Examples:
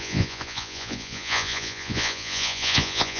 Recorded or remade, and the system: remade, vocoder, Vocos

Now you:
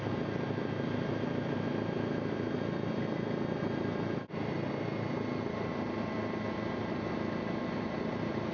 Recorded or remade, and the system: recorded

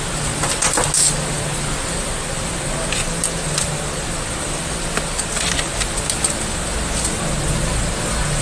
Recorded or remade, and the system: recorded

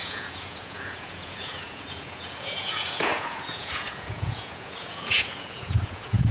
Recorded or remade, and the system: remade, vocoder, Vocos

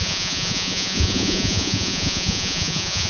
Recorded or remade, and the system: remade, vocoder, Vocos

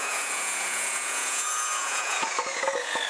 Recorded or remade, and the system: remade, vocoder, Vocos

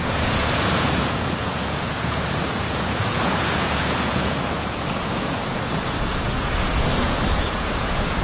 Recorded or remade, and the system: remade, vocoder, Vocos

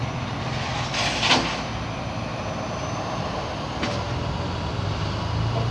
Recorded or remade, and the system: recorded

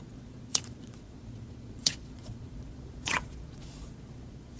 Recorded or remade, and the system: remade, vocoder, Vocos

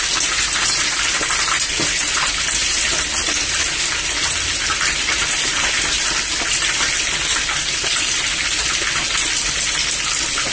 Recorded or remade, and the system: recorded